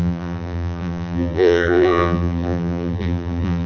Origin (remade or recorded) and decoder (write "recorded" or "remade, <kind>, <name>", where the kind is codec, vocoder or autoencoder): remade, vocoder, BigVGAN v2